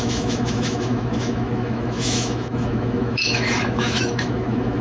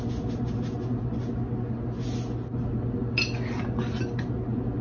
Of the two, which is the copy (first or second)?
first